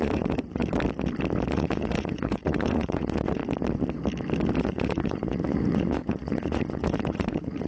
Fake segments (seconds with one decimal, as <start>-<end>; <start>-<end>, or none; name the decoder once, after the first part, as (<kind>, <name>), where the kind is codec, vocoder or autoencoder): 0.0-0.6 (vocoder, Vocos); 1.5-3.4; 4.6-7.7